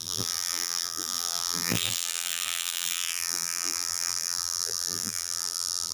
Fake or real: fake